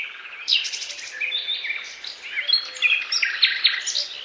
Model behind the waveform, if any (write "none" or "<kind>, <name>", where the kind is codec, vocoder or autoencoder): none